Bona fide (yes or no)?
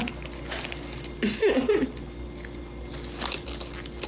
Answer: yes